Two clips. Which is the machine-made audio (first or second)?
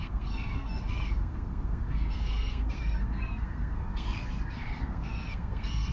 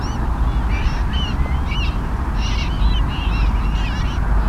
first